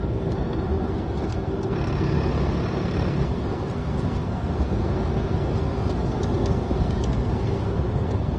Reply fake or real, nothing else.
fake